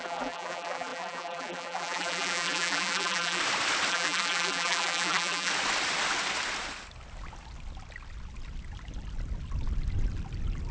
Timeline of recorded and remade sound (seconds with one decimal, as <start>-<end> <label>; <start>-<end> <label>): 0.0-3.4 remade; 3.4-3.9 recorded; 3.9-5.5 remade; 5.5-10.7 recorded